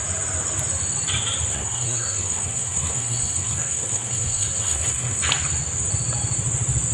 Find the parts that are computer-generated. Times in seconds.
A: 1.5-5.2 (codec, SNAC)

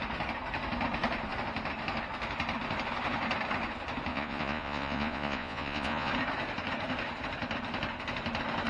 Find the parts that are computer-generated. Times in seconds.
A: 4.1-6.1 (vocoder, Vocos)

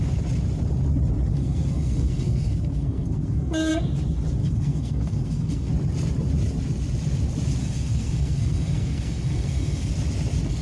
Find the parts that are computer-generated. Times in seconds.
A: 1.3-3.7 (codec, SNAC); 4.4-5.7; 7.6-9.9

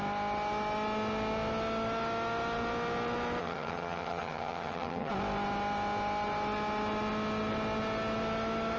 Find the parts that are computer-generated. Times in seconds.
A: 3.4-5.1 (vocoder, HiFi-GAN)

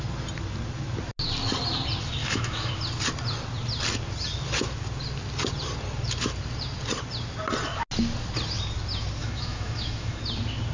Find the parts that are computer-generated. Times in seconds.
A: 2.2-2.7 (autoencoder, DAC-VAE); 9.2-10.2

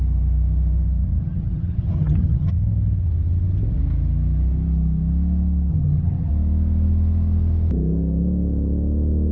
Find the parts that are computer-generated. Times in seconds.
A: 1.2-2.5 (vocoder, HiFi-GAN); 5.7-6.3

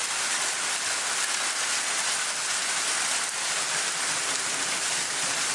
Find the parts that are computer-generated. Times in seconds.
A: none